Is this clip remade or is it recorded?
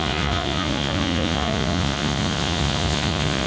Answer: remade